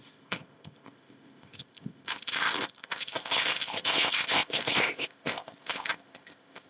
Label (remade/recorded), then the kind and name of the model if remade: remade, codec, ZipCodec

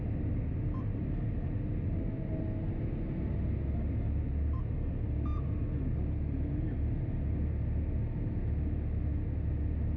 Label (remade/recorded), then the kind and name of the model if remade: recorded